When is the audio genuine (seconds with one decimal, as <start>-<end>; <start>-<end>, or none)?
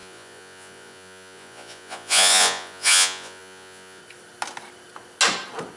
4.0-5.8